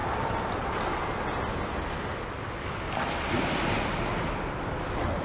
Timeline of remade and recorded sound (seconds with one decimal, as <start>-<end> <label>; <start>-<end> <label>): 0.0-5.2 recorded